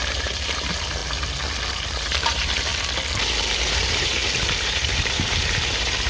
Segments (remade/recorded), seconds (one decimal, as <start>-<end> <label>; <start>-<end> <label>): 0.0-1.0 remade; 1.0-1.7 recorded; 1.7-2.7 remade; 2.7-3.7 recorded; 3.7-6.1 remade